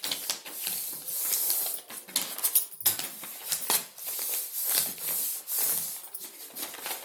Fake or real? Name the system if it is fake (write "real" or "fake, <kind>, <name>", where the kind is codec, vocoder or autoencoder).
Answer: real